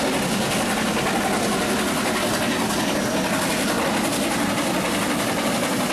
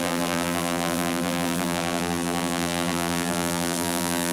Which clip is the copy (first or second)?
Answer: second